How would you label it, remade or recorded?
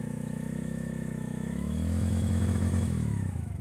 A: remade